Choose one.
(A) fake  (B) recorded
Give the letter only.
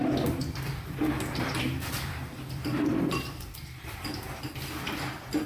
A